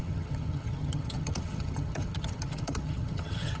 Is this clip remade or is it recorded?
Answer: remade